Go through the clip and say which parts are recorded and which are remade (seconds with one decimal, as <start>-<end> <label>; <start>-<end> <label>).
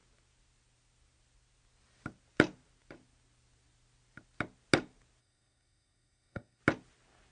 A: 0.0-5.2 recorded; 5.2-6.6 remade; 6.6-7.3 recorded